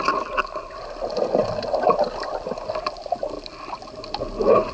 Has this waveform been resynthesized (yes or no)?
no